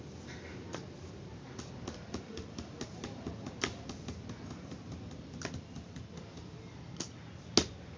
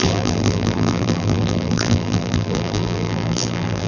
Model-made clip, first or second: second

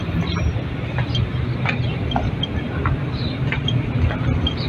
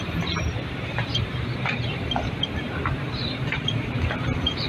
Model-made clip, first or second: second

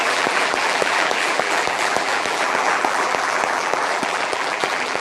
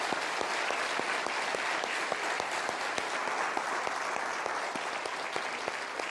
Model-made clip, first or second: first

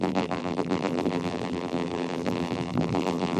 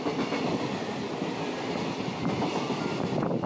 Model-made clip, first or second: first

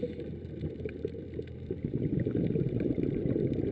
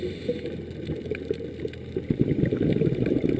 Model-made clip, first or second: first